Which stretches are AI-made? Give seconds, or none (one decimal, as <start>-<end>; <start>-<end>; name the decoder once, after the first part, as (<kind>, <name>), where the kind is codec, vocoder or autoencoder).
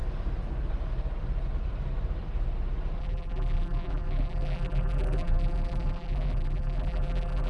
3.0-7.5 (vocoder, BigVGAN v2)